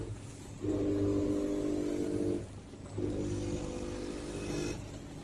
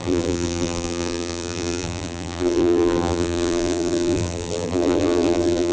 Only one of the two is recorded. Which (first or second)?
first